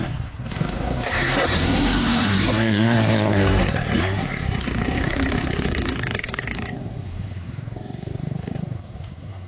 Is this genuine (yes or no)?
no